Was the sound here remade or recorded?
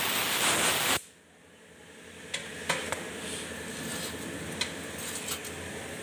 recorded